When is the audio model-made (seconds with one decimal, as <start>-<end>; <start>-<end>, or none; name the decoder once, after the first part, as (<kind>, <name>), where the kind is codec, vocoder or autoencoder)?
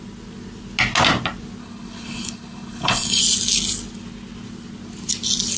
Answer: 1.6-3.2 (codec, HILCodec)